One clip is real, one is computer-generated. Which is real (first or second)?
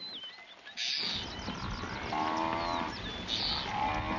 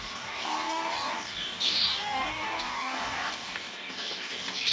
first